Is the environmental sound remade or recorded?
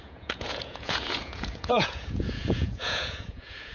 remade